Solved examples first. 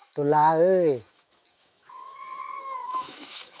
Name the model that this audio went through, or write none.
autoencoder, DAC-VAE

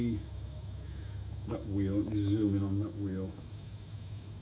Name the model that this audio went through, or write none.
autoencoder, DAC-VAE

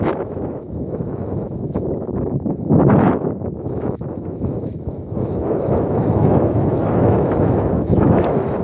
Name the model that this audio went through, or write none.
autoencoder, DAC-VAE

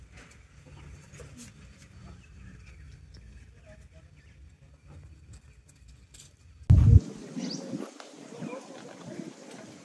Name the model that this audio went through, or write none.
none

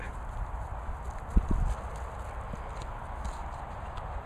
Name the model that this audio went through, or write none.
none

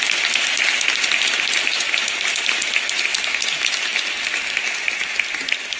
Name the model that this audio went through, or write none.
none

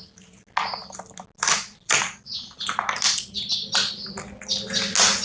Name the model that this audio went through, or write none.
none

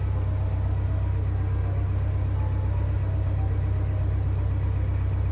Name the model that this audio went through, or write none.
none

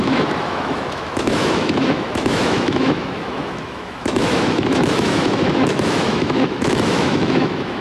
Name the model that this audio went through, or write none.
autoencoder, DAC-VAE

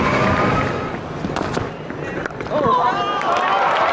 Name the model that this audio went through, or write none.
none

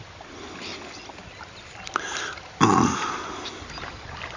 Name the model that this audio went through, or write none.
none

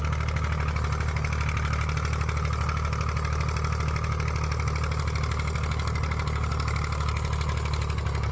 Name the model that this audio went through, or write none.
none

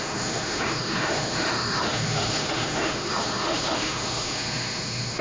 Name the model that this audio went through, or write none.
autoencoder, DAC-VAE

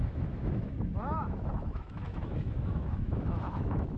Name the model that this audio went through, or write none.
autoencoder, DAC-VAE